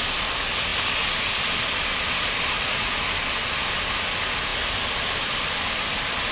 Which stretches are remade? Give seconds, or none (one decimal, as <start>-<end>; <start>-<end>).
none